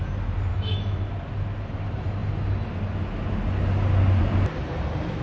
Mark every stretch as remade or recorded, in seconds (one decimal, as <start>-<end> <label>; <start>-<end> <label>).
0.0-0.5 recorded; 0.5-1.1 remade; 1.1-5.2 recorded